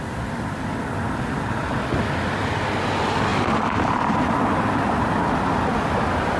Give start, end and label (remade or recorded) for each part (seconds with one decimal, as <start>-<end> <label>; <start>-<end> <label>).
0.0-6.4 recorded